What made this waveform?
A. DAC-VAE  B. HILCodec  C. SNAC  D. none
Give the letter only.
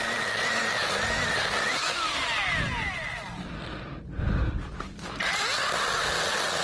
D